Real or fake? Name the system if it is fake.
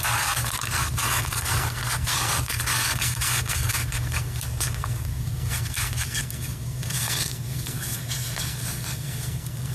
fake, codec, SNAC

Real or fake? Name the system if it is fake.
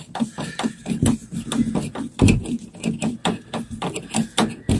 real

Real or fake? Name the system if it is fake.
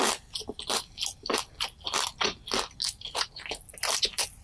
real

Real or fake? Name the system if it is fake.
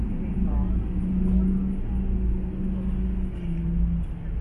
real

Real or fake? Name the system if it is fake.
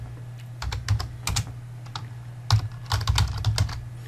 real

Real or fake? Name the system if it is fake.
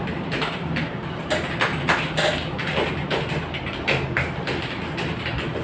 real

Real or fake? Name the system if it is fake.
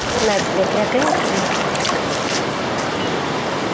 real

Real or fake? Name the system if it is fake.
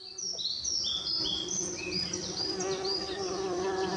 real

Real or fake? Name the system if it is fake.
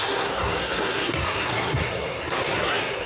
fake, codec, SNAC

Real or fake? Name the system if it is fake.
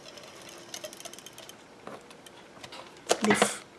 real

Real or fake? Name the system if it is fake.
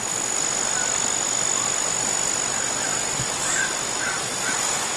real